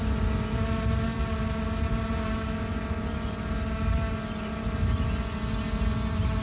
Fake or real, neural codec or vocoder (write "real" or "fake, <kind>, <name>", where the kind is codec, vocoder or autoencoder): real